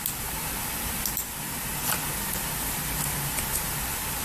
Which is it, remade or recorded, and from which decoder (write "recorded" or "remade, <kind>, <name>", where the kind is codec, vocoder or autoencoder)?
recorded